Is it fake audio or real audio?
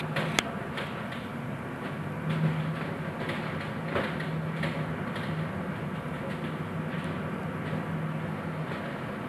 real